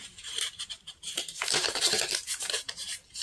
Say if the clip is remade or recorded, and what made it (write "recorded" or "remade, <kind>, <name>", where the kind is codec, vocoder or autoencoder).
remade, vocoder, BigVGAN v2